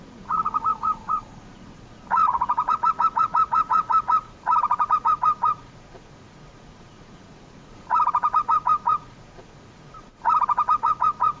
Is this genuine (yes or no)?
no